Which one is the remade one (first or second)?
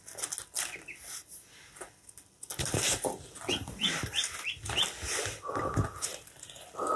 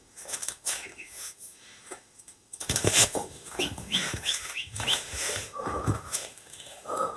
second